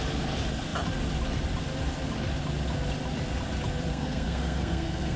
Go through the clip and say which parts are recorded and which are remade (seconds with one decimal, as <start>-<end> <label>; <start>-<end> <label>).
0.0-3.9 recorded; 3.9-5.2 remade